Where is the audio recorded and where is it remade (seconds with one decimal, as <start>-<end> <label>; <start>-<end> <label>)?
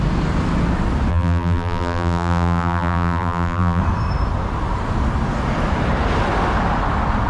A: 0.0-1.1 recorded; 1.1-3.8 remade; 3.8-7.3 recorded